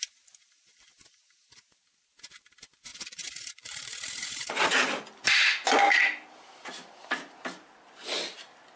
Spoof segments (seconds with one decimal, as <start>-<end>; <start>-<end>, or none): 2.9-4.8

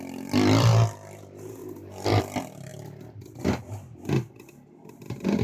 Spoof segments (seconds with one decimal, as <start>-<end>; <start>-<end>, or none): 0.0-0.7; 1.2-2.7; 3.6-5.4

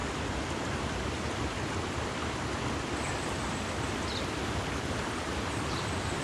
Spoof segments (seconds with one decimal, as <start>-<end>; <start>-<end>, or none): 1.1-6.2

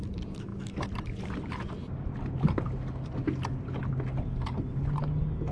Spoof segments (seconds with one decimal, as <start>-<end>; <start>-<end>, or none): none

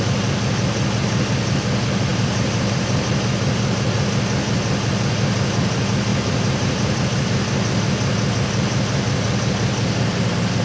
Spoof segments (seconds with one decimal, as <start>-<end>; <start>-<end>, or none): 2.1-3.1; 6.1-7.0

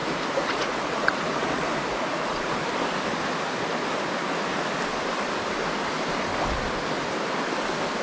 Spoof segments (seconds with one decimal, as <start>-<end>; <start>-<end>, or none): 0.0-2.6